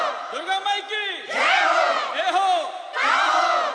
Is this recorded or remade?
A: recorded